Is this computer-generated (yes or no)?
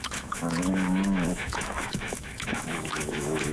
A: yes